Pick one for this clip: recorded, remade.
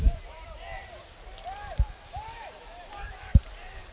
remade